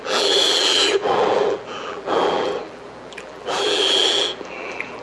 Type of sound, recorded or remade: remade